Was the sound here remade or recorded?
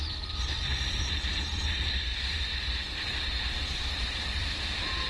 remade